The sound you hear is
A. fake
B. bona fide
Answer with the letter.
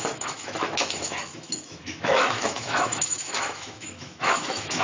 A